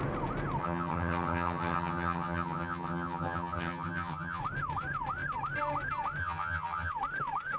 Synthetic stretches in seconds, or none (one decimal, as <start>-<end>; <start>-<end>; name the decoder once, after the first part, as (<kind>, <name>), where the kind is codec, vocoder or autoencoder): 0.6-4.4 (vocoder, HiFi-GAN); 6.2-6.9